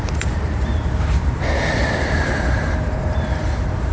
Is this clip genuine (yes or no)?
no